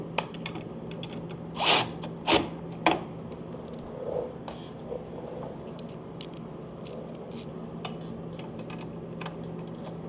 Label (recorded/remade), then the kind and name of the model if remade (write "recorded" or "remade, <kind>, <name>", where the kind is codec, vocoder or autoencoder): recorded